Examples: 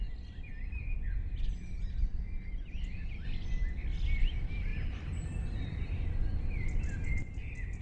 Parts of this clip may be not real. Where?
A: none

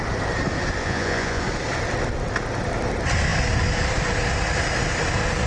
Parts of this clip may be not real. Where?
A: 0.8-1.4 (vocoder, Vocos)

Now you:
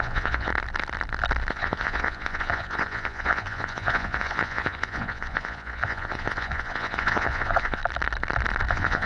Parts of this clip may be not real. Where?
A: 0.0-0.5 (vocoder, Vocos); 1.5-7.8; 8.7-9.1

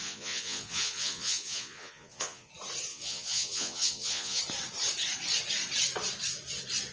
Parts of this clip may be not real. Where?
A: 0.0-2.5 (vocoder, Vocos); 2.9-4.4